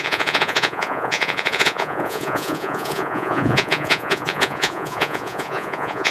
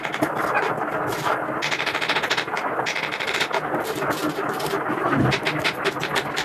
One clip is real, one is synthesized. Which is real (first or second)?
second